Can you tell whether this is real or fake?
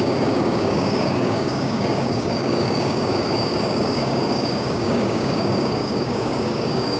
fake